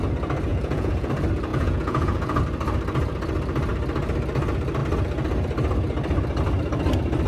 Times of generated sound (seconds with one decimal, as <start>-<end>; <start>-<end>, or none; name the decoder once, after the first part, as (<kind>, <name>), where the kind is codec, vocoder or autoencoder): 0.5-1.1 (vocoder, Vocos); 1.5-2.4